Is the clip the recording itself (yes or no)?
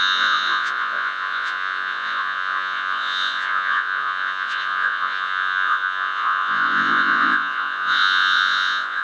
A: no